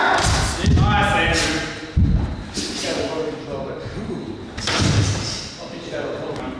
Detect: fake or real real